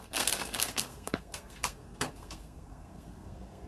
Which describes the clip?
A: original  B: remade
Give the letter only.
B